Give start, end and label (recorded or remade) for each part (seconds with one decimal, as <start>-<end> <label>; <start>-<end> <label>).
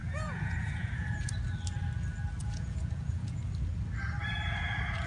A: 0.0-1.3 remade; 1.3-2.4 recorded; 2.4-3.5 remade; 3.5-5.1 recorded